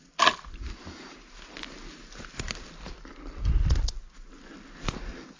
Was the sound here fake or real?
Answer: real